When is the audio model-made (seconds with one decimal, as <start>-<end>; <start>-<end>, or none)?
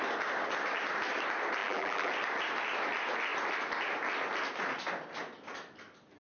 1.6-2.1